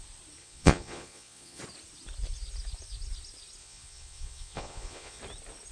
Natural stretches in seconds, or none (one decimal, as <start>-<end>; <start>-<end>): 0.0-0.4; 1.6-3.6; 5.2-5.7